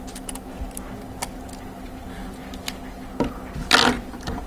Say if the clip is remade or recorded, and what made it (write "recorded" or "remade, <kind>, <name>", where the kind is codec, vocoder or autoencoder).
recorded